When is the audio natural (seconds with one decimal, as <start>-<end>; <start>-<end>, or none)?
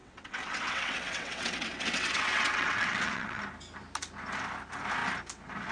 3.4-5.7